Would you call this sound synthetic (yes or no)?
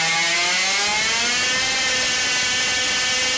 no